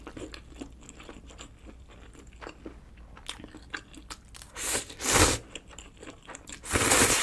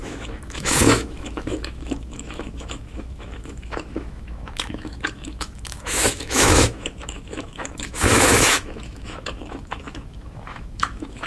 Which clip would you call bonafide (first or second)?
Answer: first